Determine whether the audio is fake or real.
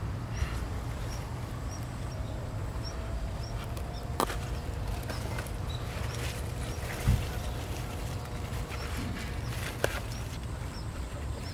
fake